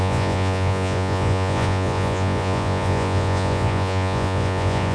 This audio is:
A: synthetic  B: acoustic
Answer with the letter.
A